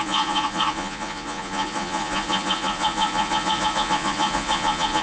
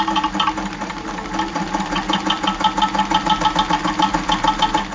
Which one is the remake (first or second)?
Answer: first